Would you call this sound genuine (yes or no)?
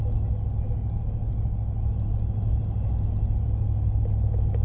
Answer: yes